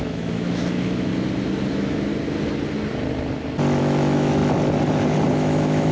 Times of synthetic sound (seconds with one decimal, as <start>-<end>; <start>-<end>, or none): 0.0-1.1; 1.7-2.1; 3.8-4.4; 5.3-5.9